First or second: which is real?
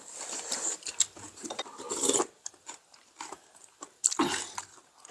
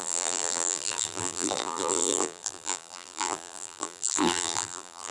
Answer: first